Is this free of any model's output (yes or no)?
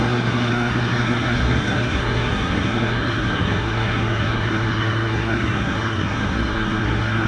no